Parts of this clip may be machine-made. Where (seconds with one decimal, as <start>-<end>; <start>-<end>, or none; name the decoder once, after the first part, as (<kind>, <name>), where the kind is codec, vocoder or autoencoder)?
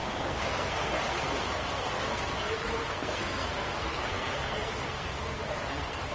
0.0-6.1 (codec, SNAC)